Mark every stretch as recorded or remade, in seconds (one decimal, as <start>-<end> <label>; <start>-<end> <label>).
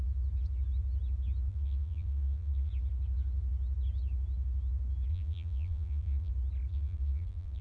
0.0-1.5 recorded; 1.5-2.7 remade; 2.7-5.1 recorded; 5.1-6.3 remade; 6.3-6.7 recorded; 6.7-7.6 remade